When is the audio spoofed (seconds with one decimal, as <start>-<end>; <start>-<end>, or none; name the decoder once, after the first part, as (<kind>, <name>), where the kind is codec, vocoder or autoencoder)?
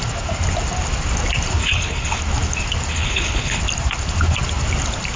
1.6-2.2 (codec, HILCodec); 2.9-3.6